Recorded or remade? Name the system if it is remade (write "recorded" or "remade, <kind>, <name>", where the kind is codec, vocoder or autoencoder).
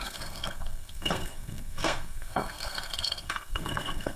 remade, codec, SNAC